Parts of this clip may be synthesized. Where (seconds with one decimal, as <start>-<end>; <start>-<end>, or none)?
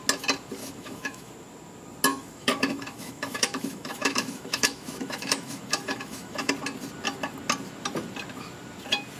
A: 0.6-1.3; 2.1-6.5